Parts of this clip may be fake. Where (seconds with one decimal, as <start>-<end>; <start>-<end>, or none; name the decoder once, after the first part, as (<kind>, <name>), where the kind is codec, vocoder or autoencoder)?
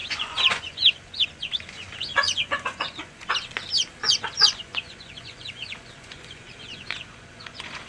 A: 0.0-3.3 (vocoder, Vocos); 4.0-7.9